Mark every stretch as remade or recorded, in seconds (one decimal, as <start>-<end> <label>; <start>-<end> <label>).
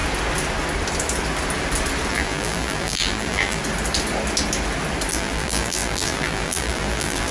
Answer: 0.0-2.1 recorded; 2.1-3.6 remade; 3.6-5.1 recorded; 5.1-7.3 remade